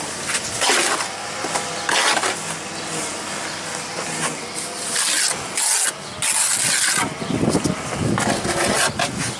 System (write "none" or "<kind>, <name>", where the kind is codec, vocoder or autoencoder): none